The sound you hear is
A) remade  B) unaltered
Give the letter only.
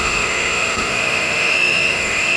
A